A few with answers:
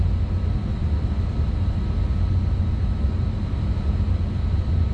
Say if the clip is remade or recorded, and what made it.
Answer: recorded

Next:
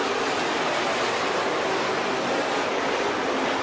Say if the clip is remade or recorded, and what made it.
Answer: recorded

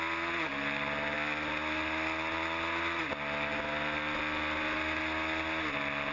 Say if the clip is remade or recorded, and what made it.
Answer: recorded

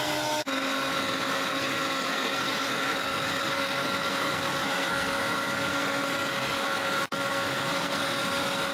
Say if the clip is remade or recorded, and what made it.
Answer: remade, codec, SNAC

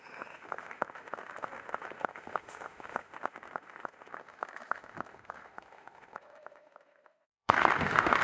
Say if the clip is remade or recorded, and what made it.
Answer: remade, autoencoder, DAC-VAE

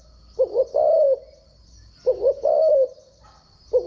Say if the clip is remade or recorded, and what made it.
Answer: recorded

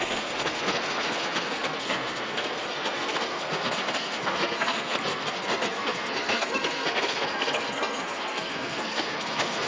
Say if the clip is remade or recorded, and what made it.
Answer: remade, codec, SNAC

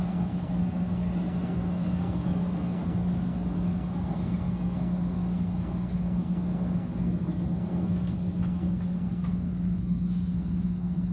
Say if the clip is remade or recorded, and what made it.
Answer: remade, codec, SNAC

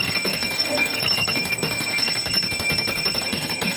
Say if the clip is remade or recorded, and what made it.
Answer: remade, codec, SNAC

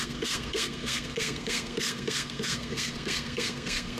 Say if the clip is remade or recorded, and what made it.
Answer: remade, codec, SNAC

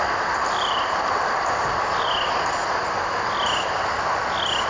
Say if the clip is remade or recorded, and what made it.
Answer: recorded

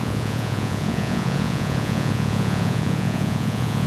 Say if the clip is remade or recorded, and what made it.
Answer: remade, vocoder, Vocos